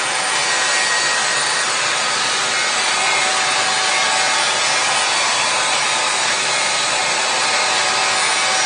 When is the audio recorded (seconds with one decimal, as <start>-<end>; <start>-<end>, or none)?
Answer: 0.4-1.2; 3.7-7.0; 8.0-8.7